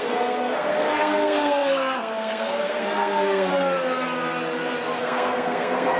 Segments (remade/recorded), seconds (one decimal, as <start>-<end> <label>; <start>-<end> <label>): 0.0-3.5 remade; 3.5-5.0 recorded; 5.0-6.0 remade